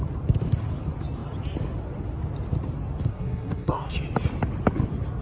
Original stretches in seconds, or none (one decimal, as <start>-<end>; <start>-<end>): 0.0-3.1; 3.9-5.2